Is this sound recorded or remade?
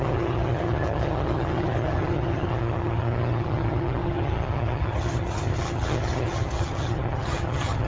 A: remade